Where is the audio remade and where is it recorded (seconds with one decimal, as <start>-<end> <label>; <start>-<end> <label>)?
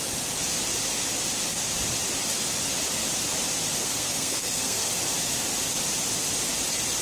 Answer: 0.0-3.8 recorded; 3.8-4.9 remade; 4.9-7.0 recorded